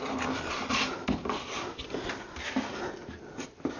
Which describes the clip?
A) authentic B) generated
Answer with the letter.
A